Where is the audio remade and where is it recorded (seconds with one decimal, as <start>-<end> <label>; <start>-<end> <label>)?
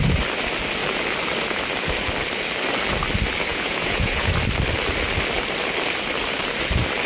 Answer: 0.0-3.5 recorded; 3.5-4.3 remade; 4.3-7.1 recorded